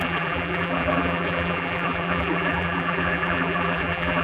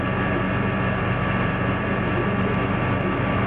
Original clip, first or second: second